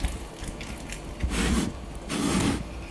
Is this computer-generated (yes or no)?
no